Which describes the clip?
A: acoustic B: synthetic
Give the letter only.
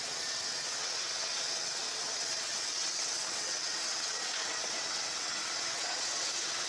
B